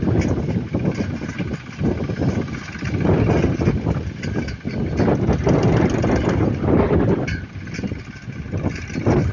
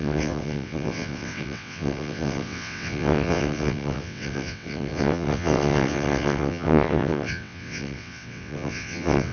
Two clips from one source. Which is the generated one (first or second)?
second